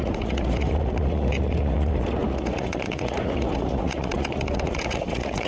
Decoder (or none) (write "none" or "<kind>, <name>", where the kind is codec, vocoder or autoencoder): vocoder, Vocos